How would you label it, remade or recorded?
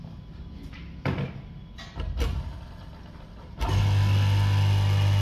recorded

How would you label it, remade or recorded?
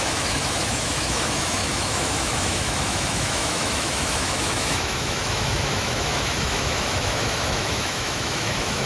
remade